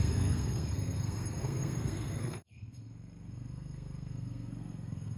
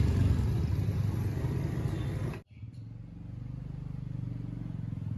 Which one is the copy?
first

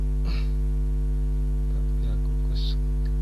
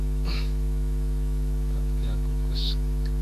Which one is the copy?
second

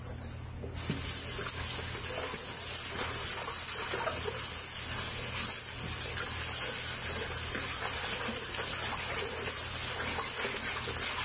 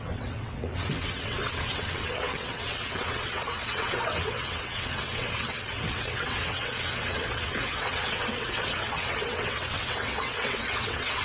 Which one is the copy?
second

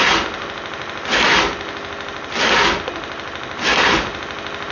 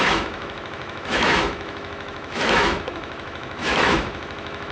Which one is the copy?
second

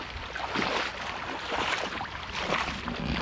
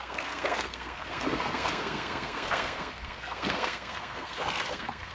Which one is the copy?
second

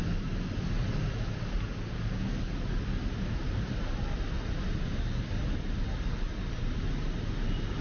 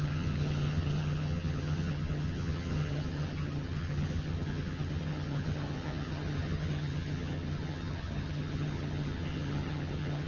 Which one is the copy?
second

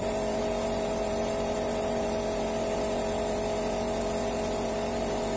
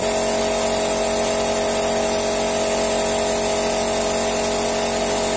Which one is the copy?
first